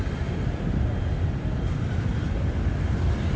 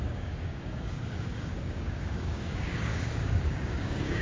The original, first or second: first